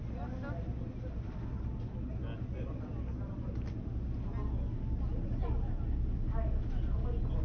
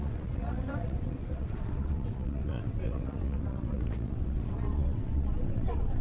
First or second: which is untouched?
first